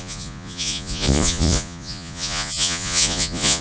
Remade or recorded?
remade